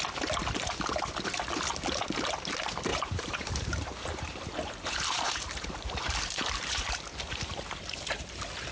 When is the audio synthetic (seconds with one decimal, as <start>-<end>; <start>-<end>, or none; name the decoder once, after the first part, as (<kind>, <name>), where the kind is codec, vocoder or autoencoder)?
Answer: 2.9-7.0 (vocoder, BigVGAN v2)